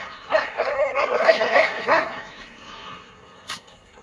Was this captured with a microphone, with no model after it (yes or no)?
no